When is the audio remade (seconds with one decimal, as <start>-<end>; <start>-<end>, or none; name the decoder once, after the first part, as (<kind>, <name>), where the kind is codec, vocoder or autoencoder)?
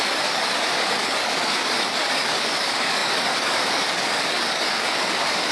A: 0.0-5.5 (codec, DAC)